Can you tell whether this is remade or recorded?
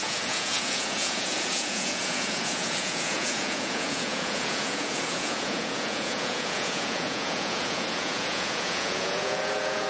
remade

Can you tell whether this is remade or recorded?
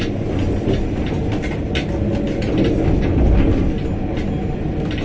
recorded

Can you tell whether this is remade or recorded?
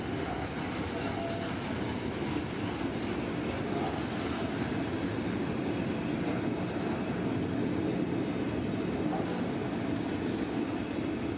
recorded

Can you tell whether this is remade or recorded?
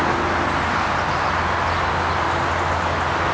recorded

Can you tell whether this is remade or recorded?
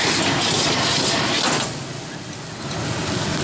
recorded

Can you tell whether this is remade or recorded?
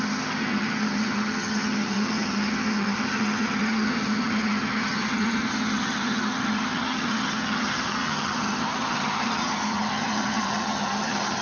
remade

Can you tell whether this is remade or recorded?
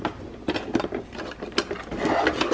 recorded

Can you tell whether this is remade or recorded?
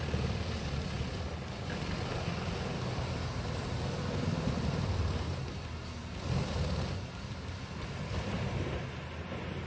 recorded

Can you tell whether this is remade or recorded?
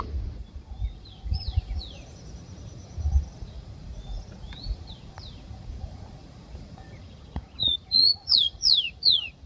remade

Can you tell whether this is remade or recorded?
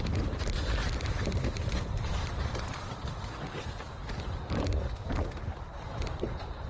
remade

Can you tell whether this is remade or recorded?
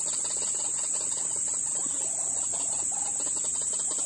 remade